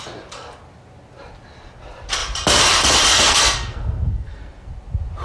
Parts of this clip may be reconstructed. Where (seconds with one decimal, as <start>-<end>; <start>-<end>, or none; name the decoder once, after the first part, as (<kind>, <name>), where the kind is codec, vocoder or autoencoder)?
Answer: 3.1-4.7 (codec, SNAC)